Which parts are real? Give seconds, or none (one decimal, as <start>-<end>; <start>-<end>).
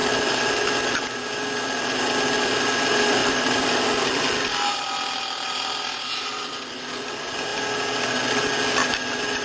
0.5-3.2; 4.2-9.4